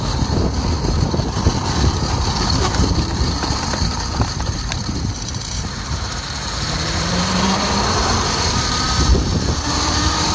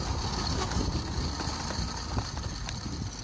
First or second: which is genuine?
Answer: second